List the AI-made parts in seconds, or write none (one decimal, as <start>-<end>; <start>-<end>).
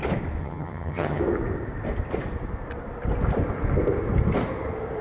0.4-1.2